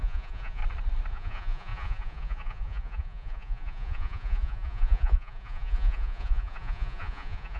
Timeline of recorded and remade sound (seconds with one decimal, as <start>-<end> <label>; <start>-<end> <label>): 0.0-0.6 remade; 0.6-1.1 recorded; 1.1-7.6 remade